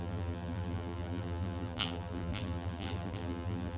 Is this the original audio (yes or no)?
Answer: no